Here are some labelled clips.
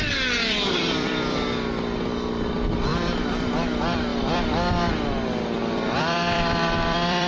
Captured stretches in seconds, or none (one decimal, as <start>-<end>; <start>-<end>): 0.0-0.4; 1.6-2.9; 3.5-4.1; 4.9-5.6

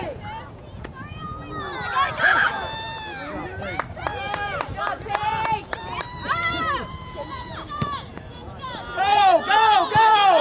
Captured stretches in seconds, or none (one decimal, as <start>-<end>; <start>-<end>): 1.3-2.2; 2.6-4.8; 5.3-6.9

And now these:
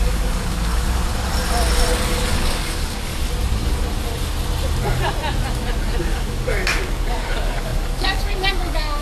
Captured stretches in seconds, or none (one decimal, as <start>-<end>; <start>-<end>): 1.0-2.0; 3.1-6.0

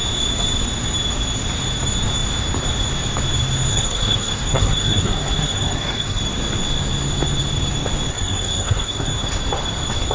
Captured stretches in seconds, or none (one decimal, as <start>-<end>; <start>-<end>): 0.0-3.7; 6.2-8.1; 9.1-10.1

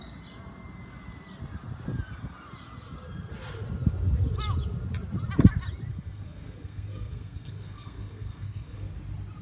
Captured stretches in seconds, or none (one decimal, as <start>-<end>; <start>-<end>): 0.0-5.9; 8.9-9.4

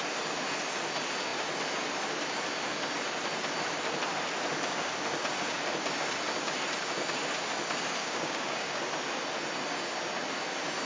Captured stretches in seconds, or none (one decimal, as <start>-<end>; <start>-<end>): 0.0-8.0; 8.8-10.9